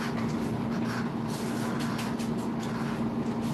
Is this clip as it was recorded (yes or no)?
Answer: yes